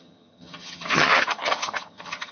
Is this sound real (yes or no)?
no